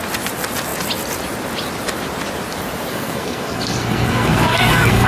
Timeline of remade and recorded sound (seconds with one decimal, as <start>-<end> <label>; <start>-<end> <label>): 0.0-2.9 recorded; 2.9-5.1 remade